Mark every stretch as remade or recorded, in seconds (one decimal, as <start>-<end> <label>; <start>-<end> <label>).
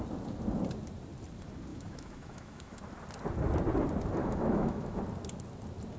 0.0-1.7 recorded; 1.7-2.8 remade; 2.8-4.2 recorded; 4.2-5.0 remade; 5.0-6.0 recorded